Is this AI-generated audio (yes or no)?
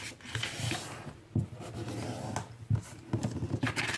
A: no